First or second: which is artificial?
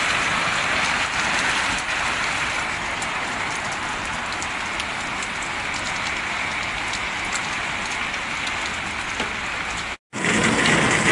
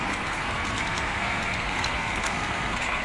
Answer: second